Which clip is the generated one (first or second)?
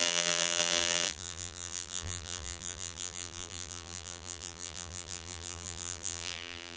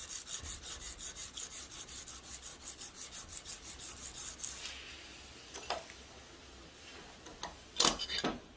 first